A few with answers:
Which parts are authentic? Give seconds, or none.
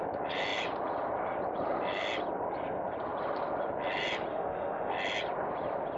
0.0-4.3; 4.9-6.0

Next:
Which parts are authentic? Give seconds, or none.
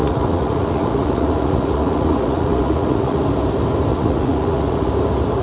3.2-3.9; 4.9-5.4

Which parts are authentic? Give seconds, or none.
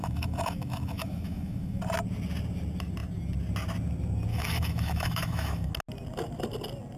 1.8-4.3; 5.7-7.0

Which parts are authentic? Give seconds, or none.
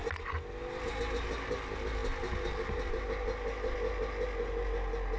0.0-5.2